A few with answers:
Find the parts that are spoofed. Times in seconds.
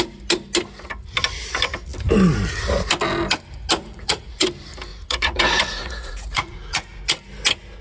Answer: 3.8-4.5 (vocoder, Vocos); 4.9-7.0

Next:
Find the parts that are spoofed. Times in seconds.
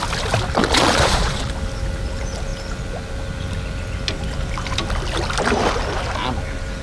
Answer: 0.6-1.5 (vocoder, Vocos)